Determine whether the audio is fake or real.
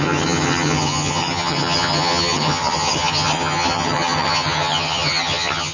fake